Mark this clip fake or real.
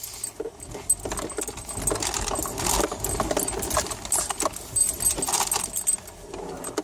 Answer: real